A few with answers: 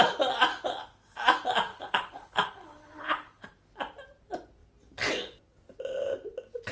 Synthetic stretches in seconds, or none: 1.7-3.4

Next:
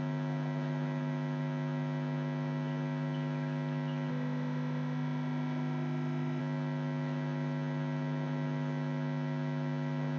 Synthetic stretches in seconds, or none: 4.1-6.4